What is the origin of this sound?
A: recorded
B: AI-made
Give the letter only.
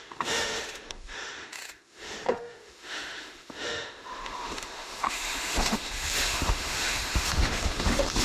B